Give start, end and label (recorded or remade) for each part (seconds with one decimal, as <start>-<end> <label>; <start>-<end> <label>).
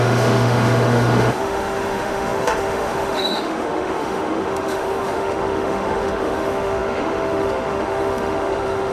0.0-8.9 remade